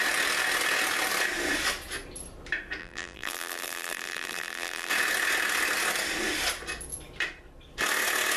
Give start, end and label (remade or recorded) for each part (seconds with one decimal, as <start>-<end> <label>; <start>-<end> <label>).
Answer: 0.0-2.8 recorded; 2.8-4.9 remade; 4.9-8.4 recorded